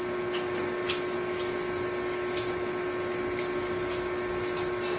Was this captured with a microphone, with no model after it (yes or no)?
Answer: yes